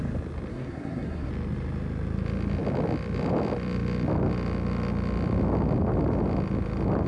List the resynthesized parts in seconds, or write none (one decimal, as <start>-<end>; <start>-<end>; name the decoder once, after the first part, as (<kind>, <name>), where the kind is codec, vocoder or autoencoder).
0.5-1.3 (codec, SNAC)